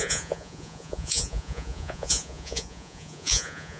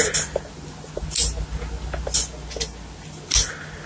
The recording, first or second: second